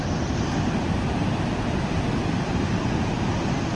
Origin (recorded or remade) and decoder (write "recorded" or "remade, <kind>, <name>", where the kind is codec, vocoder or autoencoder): recorded